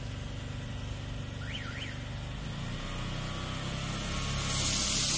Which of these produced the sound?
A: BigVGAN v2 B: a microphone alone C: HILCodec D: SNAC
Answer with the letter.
B